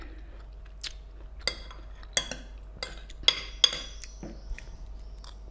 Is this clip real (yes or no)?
yes